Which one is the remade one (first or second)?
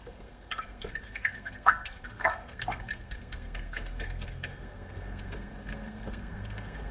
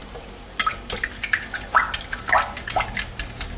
first